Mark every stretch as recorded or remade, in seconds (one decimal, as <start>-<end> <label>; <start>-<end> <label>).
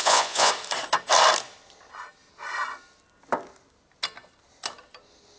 0.0-0.5 remade; 0.5-5.4 recorded